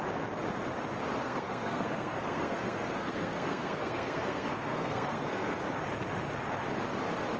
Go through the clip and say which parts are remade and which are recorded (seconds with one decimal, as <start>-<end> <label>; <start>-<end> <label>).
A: 0.0-1.2 recorded; 1.2-5.6 remade; 5.6-7.4 recorded